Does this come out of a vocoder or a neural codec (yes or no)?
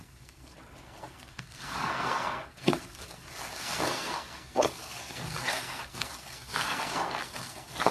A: yes